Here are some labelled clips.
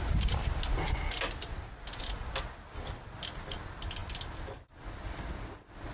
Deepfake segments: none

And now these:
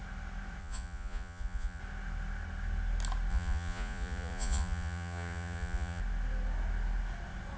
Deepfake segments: 0.6-1.8 (vocoder, Vocos); 3.3-6.0

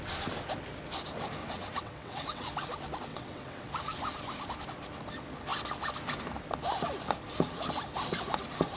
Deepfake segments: 1.4-2.5 (vocoder, WaveNeXt); 3.1-3.7

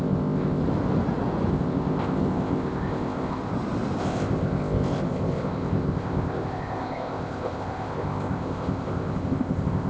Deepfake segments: 0.0-0.6 (codec, ZipCodec); 1.5-3.4; 4.0-9.9

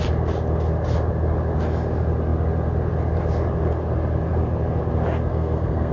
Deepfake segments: 5.3-5.9 (codec, SNAC)

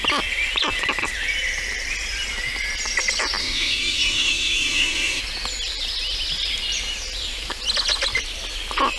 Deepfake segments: 3.4-5.2 (codec, DAC)

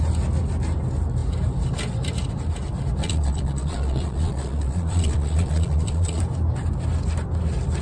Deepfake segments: 3.0-6.2 (vocoder, Vocos)